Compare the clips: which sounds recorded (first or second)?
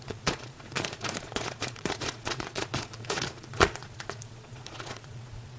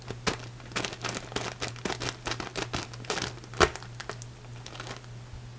second